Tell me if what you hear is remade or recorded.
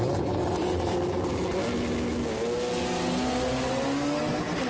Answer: recorded